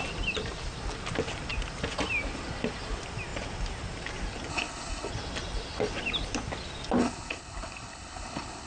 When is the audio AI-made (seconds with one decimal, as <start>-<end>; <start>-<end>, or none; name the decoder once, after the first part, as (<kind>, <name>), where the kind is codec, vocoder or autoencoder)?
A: 4.5-5.1 (codec, HILCodec); 7.0-8.7